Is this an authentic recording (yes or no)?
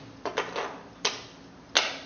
yes